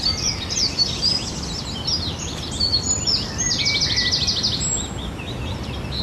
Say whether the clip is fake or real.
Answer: real